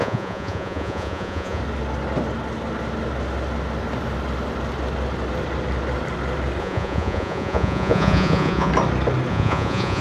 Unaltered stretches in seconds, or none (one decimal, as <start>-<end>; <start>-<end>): 1.6-6.6; 8.7-9.3